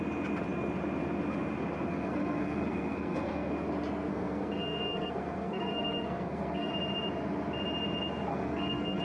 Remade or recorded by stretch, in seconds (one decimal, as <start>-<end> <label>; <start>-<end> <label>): 0.0-1.9 recorded; 1.9-3.5 remade; 3.5-4.1 recorded; 4.1-6.7 remade; 6.7-8.3 recorded; 8.3-9.0 remade